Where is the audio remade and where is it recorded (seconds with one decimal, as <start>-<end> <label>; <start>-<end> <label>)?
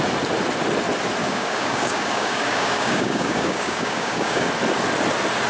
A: 0.0-1.2 recorded; 1.2-4.5 remade; 4.5-5.5 recorded